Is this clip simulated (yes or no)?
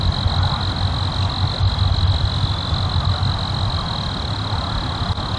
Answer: no